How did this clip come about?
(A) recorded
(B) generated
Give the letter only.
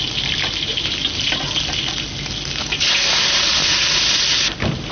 A